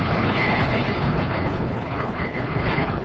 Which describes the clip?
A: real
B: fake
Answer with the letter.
B